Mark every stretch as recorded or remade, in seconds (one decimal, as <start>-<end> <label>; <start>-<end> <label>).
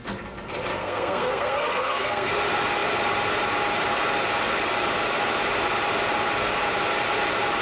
0.0-0.8 recorded; 0.8-2.3 remade; 2.3-7.6 recorded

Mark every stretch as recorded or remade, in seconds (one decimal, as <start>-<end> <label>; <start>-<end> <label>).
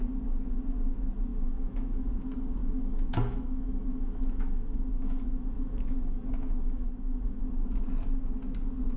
0.0-1.3 recorded; 1.3-2.1 remade; 2.1-2.6 recorded; 2.6-7.4 remade; 7.4-9.0 recorded